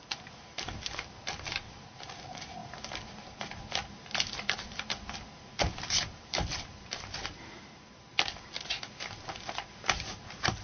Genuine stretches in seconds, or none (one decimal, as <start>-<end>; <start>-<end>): 8.1-9.7